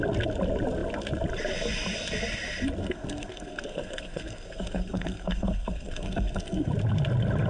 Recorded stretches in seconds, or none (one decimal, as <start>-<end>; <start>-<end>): 0.0-2.8; 6.7-7.5